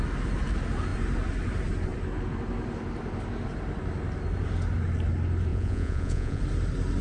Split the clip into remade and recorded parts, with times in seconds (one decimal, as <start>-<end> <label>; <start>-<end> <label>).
0.0-5.5 recorded; 5.5-6.4 remade; 6.4-7.0 recorded